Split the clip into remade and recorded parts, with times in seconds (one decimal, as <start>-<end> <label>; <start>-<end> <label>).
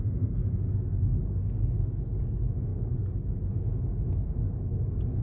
0.0-5.2 recorded